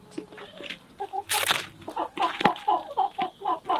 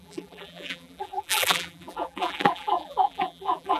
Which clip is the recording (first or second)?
first